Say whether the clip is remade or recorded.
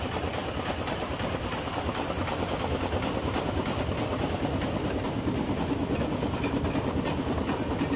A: recorded